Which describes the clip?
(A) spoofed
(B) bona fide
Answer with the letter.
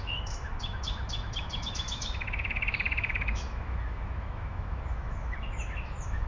A